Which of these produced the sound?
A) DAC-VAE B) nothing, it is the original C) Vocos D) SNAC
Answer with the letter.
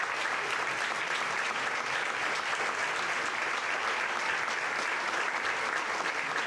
B